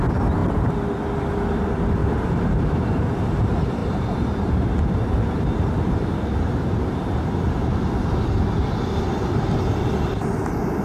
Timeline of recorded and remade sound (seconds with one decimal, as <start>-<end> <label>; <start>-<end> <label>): 0.0-2.0 recorded; 2.0-3.3 remade; 3.3-3.8 recorded; 3.8-7.9 remade; 7.9-10.8 recorded